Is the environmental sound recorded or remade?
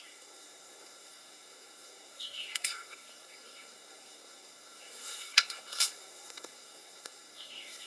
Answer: remade